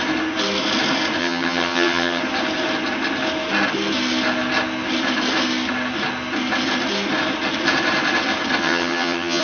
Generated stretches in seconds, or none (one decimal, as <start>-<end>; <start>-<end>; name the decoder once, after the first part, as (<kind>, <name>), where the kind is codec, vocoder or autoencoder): 1.2-2.2 (vocoder, HiFi-GAN); 8.6-9.4